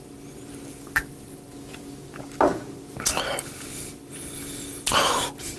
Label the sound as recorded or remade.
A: recorded